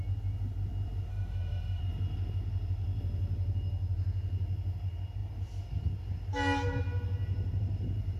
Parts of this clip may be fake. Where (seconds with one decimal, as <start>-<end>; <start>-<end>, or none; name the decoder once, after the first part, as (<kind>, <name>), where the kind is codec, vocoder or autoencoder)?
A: 1.1-1.8 (autoencoder, DAC-VAE)

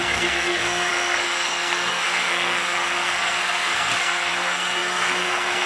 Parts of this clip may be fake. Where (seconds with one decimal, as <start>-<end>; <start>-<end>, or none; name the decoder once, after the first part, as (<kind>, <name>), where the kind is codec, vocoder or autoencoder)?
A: 0.0-5.7 (codec, SNAC)

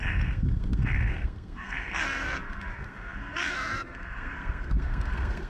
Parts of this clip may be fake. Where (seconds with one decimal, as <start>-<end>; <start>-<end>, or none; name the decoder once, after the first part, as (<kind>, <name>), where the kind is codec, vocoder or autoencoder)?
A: 0.0-5.5 (codec, SNAC)